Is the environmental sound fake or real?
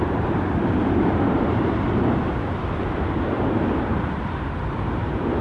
fake